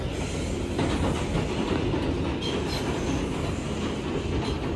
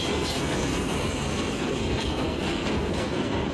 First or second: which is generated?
second